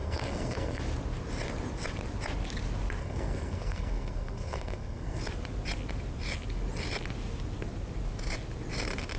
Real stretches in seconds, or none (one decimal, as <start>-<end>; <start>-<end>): 0.8-3.0; 5.2-9.2